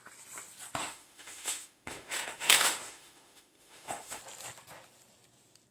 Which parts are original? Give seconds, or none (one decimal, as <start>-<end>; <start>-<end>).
0.0-0.8; 4.2-5.7